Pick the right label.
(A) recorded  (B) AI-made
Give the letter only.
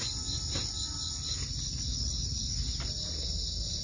A